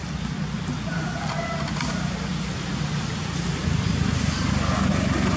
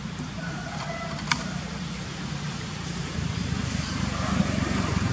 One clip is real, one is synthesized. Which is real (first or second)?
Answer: first